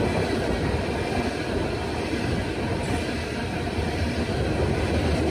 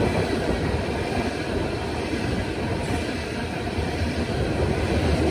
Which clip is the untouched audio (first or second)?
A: first